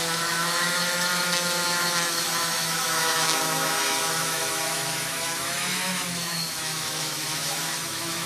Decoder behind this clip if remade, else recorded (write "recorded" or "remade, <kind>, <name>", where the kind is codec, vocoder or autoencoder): remade, autoencoder, DAC-VAE